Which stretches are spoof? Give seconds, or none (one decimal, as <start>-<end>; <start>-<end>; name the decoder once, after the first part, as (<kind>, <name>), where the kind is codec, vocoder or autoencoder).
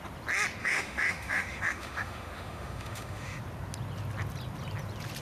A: 0.6-3.4 (autoencoder, DAC-VAE)